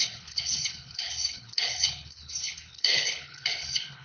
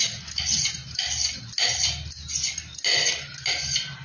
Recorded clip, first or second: second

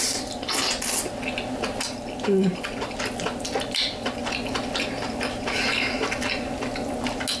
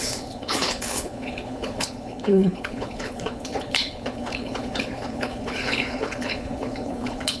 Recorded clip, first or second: first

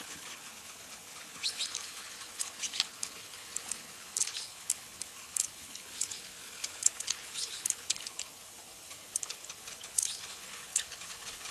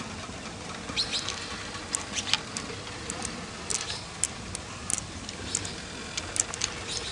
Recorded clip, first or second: second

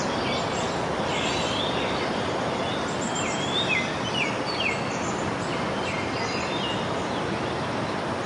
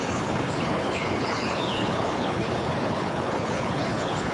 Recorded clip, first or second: first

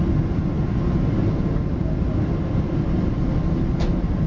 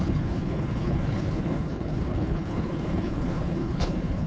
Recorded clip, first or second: first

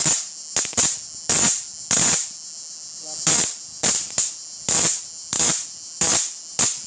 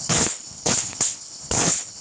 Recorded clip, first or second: first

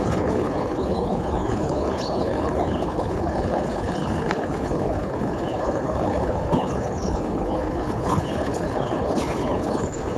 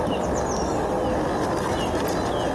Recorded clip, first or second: second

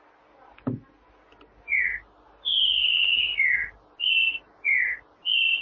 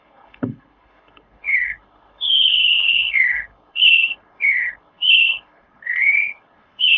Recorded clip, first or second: first